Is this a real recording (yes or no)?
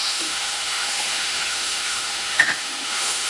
no